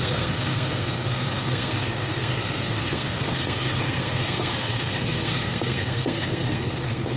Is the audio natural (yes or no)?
no